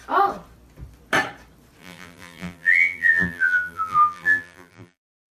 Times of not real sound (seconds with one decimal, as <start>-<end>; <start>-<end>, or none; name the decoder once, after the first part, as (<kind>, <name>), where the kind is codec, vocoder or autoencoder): 1.8-5.3 (vocoder, BigVGAN v2)